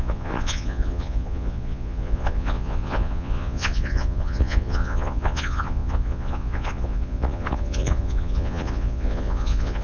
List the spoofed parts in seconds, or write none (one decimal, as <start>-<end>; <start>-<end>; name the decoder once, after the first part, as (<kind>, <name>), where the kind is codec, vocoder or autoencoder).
0.0-9.8 (vocoder, Vocos)